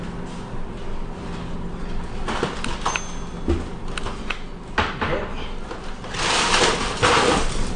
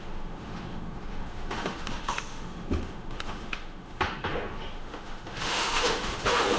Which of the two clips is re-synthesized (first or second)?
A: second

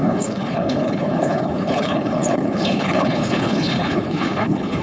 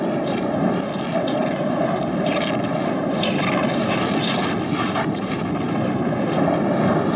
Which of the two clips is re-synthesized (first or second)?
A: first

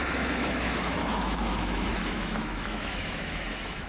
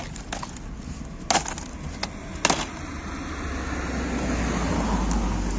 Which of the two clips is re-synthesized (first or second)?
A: first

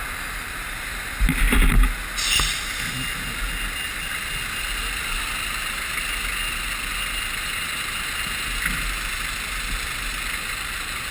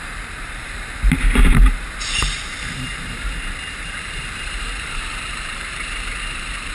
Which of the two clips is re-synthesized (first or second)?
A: second